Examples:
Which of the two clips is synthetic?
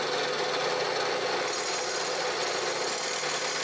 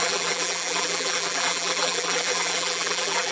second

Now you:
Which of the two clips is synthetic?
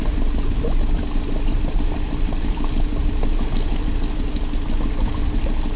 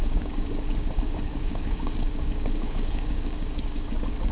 second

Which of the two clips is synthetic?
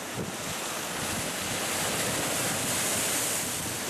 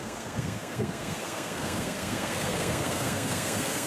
second